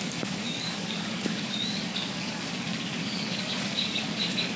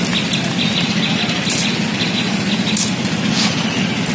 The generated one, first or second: first